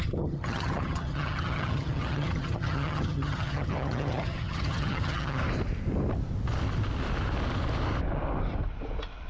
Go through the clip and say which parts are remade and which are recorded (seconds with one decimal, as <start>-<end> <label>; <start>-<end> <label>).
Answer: 0.0-5.4 remade; 5.4-9.3 recorded